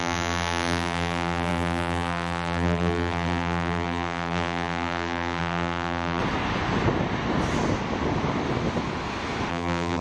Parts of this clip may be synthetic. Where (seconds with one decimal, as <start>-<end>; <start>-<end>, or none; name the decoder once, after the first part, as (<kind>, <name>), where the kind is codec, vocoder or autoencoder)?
0.0-6.2 (vocoder, BigVGAN v2); 9.5-10.0